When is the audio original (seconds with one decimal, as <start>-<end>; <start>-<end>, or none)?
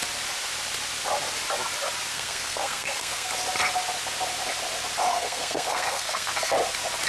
0.0-2.1; 3.3-5.1; 6.3-7.1